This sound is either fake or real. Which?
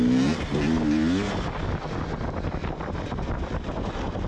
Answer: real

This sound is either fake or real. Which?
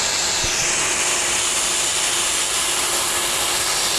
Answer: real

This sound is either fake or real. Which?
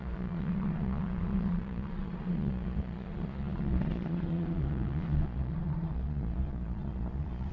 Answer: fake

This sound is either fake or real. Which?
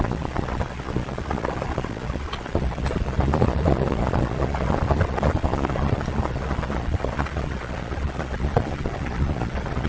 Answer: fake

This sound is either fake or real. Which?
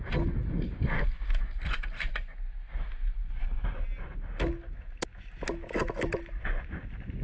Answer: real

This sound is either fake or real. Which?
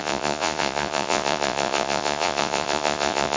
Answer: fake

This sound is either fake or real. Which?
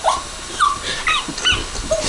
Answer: real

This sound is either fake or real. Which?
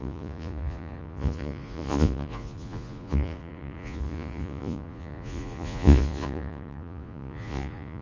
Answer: fake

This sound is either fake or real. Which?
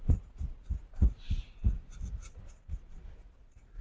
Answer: fake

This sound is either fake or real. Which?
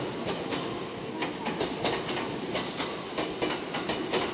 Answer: real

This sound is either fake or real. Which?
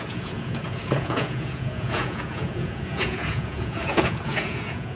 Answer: fake